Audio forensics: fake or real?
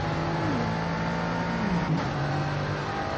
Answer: real